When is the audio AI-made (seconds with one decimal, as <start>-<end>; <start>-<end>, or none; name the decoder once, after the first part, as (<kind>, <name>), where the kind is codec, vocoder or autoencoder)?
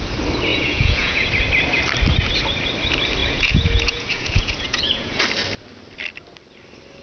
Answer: 0.5-1.3 (vocoder, Vocos); 3.2-5.2